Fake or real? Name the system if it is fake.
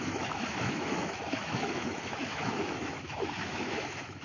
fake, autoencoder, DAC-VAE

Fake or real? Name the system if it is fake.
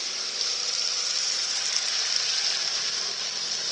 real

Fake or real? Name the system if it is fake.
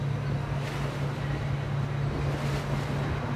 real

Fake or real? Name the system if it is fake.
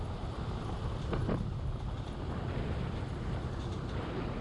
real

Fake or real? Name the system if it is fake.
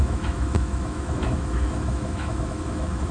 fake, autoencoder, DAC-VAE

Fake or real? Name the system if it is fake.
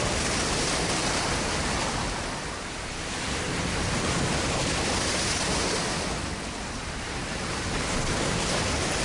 real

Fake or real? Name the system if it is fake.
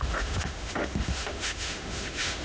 fake, autoencoder, DAC-VAE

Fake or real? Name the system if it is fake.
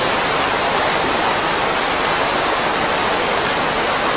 real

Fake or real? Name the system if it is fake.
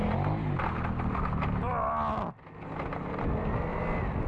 real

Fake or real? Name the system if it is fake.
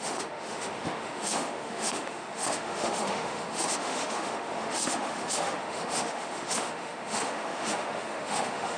fake, autoencoder, DAC-VAE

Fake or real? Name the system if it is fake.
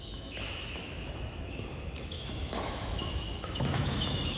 fake, autoencoder, DAC-VAE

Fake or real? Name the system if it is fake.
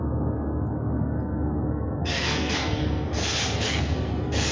fake, codec, SNAC